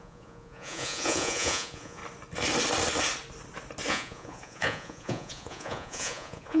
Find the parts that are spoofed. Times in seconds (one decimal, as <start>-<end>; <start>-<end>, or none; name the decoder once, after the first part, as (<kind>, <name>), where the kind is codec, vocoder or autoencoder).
0.0-2.0 (vocoder, Vocos); 3.9-6.6